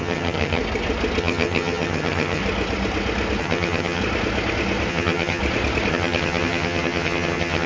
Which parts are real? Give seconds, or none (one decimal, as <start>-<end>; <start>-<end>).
0.6-1.2; 2.4-3.4; 4.0-4.9; 5.4-5.9